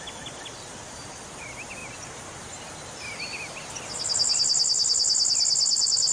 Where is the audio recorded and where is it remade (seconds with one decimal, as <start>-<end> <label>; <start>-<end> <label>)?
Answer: 0.0-6.1 recorded